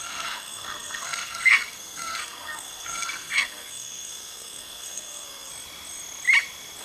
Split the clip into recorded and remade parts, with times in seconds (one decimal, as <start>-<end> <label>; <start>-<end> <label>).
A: 0.0-5.5 remade; 5.5-6.8 recorded